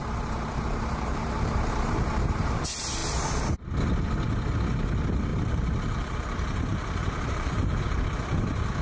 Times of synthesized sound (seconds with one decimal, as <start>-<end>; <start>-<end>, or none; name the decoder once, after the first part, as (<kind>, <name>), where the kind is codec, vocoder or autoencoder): 0.0-2.6 (vocoder, BigVGAN v2); 5.3-7.8